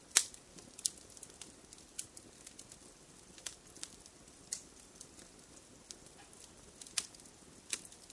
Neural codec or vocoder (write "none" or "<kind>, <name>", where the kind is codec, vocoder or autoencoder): none